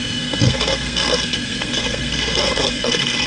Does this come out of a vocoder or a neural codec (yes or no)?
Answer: yes